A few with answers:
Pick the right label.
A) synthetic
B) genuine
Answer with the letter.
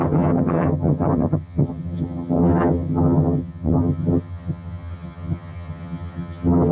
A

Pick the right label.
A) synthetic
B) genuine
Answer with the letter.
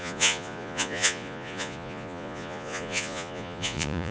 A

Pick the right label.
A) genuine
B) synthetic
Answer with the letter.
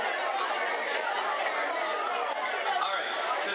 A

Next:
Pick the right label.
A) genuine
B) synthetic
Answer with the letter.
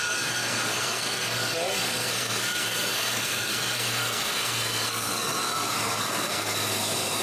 B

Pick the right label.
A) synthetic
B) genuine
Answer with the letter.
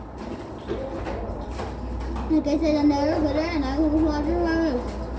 B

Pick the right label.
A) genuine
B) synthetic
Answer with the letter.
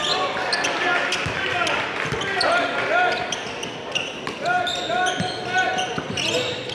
A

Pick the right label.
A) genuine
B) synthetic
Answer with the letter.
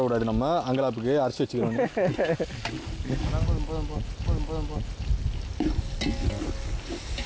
A